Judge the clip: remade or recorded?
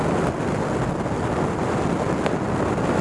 recorded